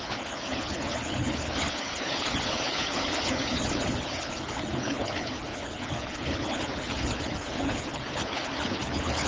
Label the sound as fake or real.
fake